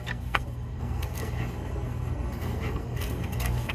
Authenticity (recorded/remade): remade